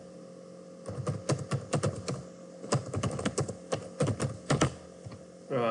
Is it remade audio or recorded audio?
recorded